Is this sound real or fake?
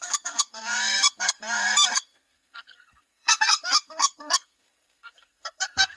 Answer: fake